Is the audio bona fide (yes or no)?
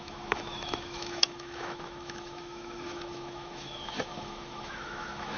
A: no